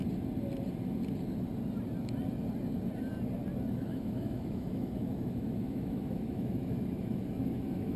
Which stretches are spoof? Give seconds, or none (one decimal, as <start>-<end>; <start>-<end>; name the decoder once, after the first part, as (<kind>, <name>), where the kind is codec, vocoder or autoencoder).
3.7-8.0 (autoencoder, DAC-VAE)